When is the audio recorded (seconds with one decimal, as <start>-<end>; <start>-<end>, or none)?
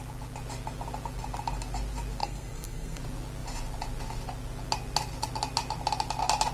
0.0-2.2; 3.0-6.5